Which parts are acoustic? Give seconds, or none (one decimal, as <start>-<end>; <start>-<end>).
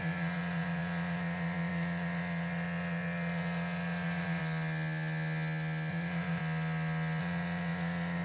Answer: 4.4-5.9; 6.4-7.2